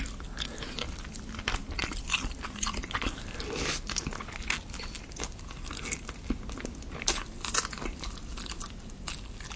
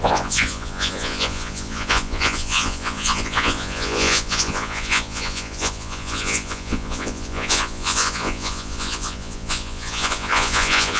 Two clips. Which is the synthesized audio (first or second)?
second